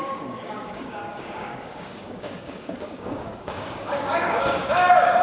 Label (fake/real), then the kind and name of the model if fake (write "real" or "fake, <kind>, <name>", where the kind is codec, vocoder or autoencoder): fake, codec, DAC